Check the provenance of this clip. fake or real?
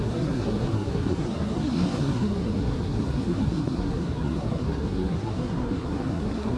fake